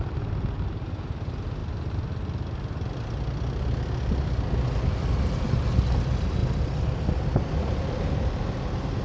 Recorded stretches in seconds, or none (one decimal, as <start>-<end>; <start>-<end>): 0.0-9.0